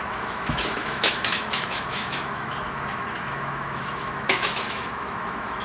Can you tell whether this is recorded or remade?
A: remade